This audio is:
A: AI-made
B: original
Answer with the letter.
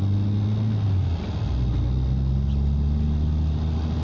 B